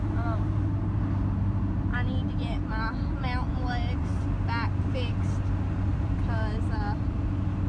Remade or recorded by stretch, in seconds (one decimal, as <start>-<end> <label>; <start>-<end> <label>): 0.0-5.9 recorded; 5.9-7.2 remade; 7.2-7.7 recorded